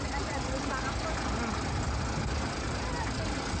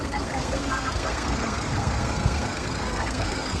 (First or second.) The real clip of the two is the first